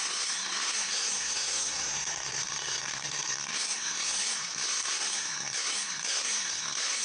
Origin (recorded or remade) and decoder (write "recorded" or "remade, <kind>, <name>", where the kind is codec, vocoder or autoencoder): remade, codec, SNAC